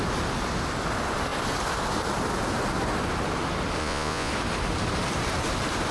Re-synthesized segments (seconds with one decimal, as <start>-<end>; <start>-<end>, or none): 3.8-4.3